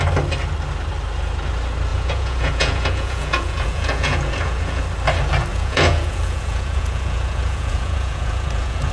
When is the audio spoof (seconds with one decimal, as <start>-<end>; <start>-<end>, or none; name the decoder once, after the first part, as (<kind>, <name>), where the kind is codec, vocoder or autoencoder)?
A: 1.9-4.8 (vocoder, Vocos); 5.5-8.9